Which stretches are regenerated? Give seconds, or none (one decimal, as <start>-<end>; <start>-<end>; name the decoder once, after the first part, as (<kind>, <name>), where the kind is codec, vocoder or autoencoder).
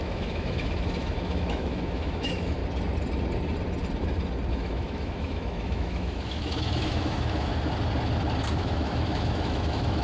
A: 0.0-2.6 (autoencoder, DAC-VAE); 4.5-7.5; 8.6-10.0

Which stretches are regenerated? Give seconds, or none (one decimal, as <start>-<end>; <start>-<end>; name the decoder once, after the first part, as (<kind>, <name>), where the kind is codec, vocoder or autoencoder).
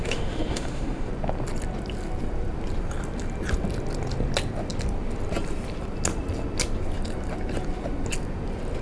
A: 0.0-1.1 (autoencoder, DAC-VAE)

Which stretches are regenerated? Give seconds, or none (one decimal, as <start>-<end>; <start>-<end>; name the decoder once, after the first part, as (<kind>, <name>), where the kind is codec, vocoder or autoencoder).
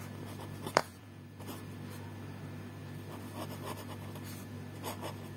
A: 0.8-1.4 (vocoder, Vocos)